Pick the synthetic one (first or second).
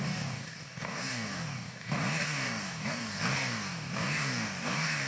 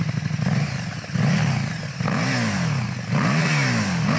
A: first